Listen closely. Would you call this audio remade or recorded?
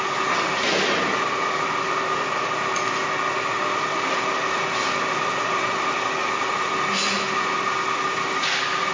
recorded